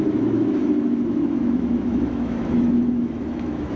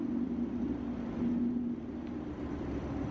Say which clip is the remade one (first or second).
first